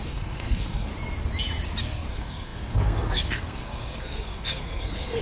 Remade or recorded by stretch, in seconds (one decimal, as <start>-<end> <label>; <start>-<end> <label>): 0.0-0.9 remade; 0.9-1.8 recorded; 1.8-5.2 remade